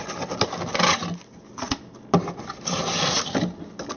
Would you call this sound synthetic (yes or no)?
no